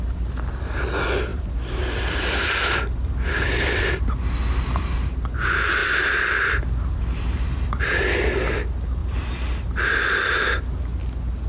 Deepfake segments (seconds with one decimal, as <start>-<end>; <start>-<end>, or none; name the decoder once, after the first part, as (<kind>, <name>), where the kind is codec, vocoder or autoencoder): 1.3-3.8 (vocoder, BigVGAN v2); 5.8-7.8; 9.0-9.5